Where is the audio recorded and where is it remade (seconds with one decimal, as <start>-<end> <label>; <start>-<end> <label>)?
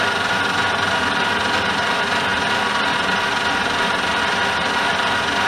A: 0.0-5.5 recorded